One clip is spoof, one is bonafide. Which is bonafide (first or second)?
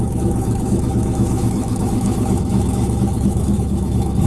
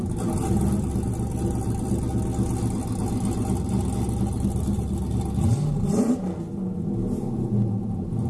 second